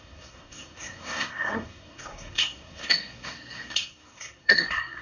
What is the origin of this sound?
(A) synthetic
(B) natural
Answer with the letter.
A